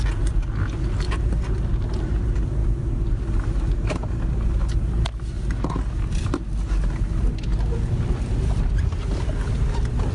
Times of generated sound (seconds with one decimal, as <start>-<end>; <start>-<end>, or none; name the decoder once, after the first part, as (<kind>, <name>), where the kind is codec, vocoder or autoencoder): none